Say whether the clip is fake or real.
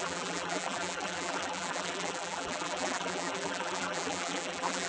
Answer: fake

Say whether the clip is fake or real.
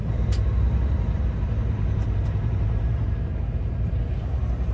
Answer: fake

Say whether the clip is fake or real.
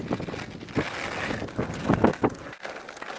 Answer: real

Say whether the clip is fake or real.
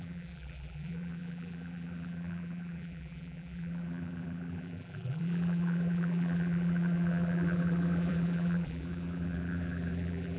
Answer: fake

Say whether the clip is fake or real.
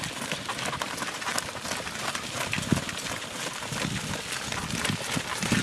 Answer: real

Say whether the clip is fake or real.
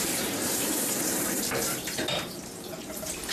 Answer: fake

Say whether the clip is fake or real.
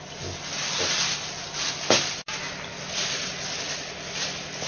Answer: real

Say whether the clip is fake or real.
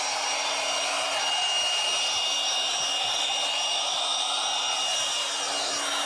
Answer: real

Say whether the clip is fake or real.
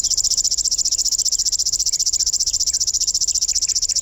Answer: real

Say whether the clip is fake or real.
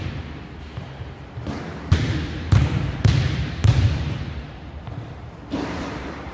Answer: fake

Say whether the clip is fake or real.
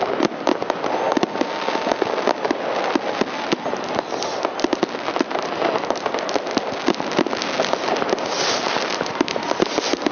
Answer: real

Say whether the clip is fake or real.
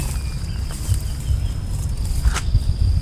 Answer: real